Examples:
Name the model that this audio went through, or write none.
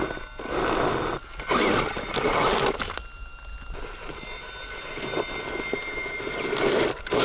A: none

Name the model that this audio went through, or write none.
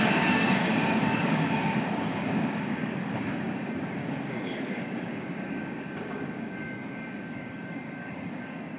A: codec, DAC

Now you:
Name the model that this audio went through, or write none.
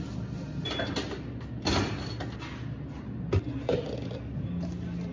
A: none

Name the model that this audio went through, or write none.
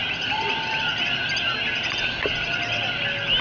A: none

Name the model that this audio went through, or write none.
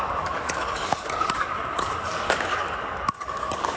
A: codec, DAC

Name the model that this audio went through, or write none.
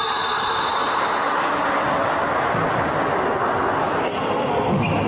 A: none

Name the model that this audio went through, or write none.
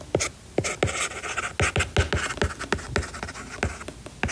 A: none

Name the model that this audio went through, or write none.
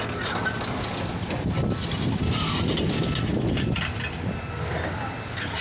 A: none